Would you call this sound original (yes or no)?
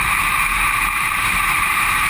no